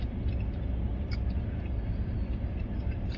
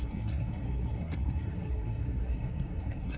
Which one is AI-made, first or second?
second